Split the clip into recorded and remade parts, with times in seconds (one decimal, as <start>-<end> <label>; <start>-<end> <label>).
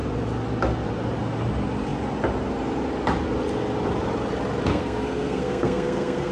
0.0-4.7 recorded; 4.7-6.3 remade